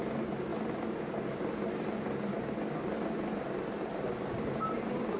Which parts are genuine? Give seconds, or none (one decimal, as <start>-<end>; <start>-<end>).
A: 0.0-5.2